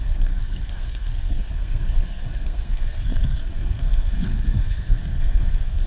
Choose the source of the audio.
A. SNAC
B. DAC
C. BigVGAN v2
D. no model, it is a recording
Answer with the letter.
A